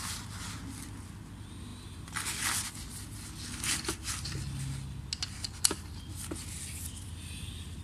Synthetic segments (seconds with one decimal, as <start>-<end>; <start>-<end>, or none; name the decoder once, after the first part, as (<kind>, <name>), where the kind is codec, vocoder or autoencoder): none